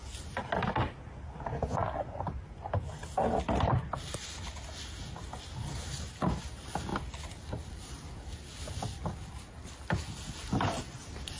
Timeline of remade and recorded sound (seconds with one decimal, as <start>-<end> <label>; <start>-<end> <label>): 0.0-1.5 remade; 1.5-3.7 recorded; 3.7-5.0 remade; 5.0-6.9 recorded; 6.9-9.7 remade; 9.7-11.4 recorded